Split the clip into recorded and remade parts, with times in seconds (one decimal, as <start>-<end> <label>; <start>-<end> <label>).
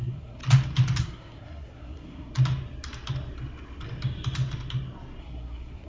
0.0-0.4 remade; 0.4-1.0 recorded; 1.0-2.3 remade; 2.3-5.2 recorded; 5.2-5.9 remade